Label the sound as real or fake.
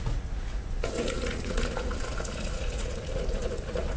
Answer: fake